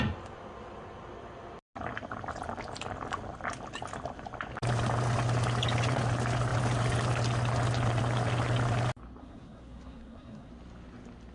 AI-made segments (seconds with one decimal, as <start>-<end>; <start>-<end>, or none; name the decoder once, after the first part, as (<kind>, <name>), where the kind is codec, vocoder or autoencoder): 9.2-10.5 (codec, SNAC)